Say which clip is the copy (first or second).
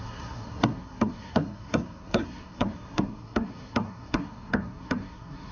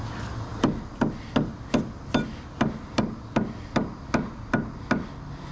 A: first